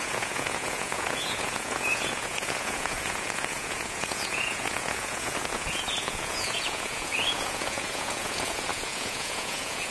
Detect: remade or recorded remade